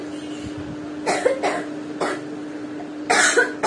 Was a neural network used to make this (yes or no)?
no